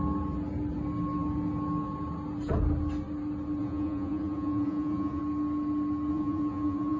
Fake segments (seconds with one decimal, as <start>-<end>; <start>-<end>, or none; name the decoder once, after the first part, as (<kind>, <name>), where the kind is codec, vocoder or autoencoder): 3.6-5.2 (vocoder, Vocos); 6.1-7.0